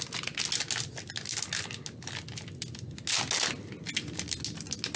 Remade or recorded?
recorded